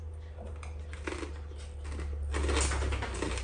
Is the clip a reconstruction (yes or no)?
no